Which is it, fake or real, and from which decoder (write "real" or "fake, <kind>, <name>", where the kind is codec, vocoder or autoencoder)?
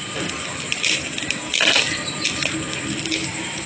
real